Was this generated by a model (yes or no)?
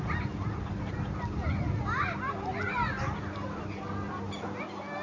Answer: no